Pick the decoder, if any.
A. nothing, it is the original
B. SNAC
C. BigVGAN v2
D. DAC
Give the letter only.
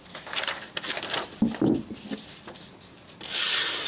A